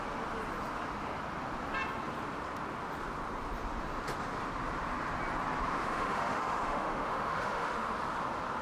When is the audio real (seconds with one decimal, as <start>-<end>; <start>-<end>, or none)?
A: 0.0-5.8; 7.9-8.6